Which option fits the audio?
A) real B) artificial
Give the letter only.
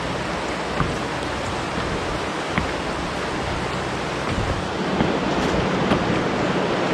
A